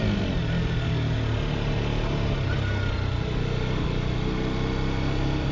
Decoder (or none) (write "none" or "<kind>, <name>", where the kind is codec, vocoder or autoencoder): none